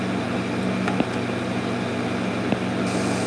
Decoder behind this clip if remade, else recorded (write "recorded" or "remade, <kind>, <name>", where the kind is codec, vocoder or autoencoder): recorded